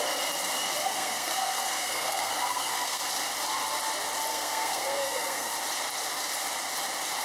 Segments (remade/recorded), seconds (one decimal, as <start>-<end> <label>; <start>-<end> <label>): 0.0-0.8 recorded; 0.8-3.0 remade; 3.0-4.3 recorded; 4.3-5.5 remade; 5.5-7.2 recorded